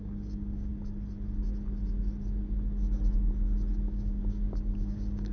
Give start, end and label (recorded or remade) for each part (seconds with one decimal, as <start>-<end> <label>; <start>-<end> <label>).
0.0-0.7 remade; 0.7-3.9 recorded; 3.9-5.3 remade